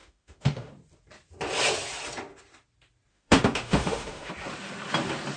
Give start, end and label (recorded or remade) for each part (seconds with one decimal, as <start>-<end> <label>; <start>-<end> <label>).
0.0-0.7 remade; 0.7-3.1 recorded; 3.1-4.3 remade; 4.3-5.4 recorded